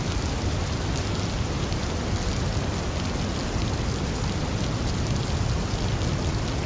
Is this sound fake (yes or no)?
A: no